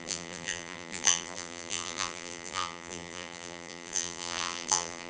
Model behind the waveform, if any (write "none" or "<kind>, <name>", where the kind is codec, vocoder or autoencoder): vocoder, BigVGAN v2